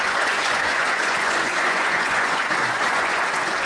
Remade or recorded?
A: remade